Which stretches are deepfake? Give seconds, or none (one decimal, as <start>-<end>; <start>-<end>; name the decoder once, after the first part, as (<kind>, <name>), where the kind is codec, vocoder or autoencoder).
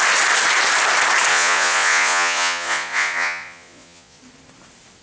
1.3-4.2 (vocoder, Vocos)